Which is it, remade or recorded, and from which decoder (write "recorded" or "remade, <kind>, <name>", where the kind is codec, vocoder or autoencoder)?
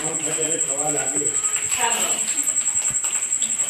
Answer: remade, vocoder, BigVGAN v2